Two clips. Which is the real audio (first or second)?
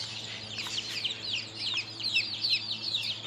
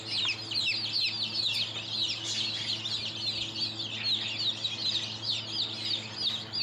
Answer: second